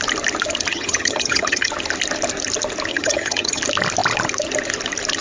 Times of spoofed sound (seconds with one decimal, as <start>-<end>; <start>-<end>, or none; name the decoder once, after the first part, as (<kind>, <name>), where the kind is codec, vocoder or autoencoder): 0.7-1.7 (vocoder, HiFi-GAN); 2.9-3.6